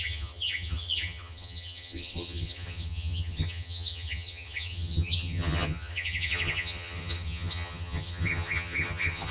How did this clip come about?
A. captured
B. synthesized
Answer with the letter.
B